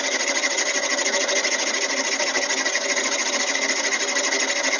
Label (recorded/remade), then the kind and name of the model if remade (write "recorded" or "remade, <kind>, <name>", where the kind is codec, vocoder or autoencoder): recorded